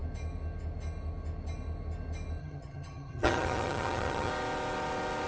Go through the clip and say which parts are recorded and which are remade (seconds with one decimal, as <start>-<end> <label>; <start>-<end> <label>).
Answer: 0.0-2.4 recorded; 2.4-4.3 remade; 4.3-5.3 recorded